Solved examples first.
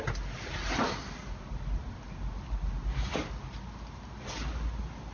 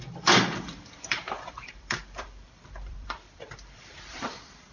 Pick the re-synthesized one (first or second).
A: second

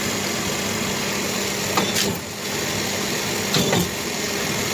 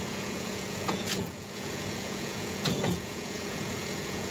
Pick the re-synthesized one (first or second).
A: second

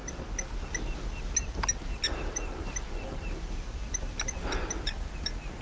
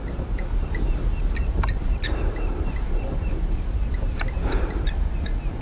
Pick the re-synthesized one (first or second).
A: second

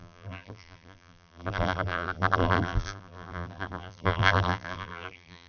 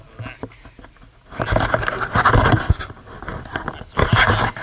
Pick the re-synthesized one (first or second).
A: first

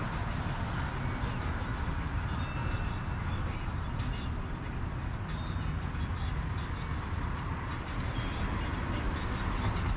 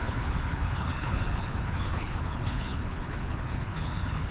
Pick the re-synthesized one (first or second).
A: second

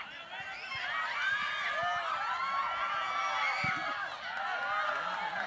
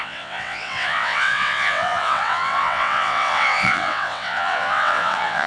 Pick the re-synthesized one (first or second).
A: second